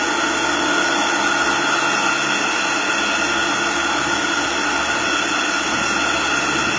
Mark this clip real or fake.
real